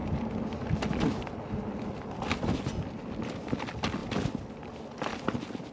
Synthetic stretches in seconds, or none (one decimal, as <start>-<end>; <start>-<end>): none